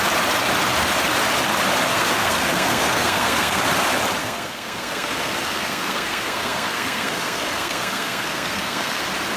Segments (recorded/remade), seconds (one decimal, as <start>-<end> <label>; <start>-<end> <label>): 0.0-1.9 recorded; 1.9-3.6 remade; 3.6-4.2 recorded; 4.2-9.0 remade; 9.0-9.4 recorded